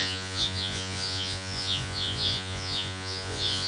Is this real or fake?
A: fake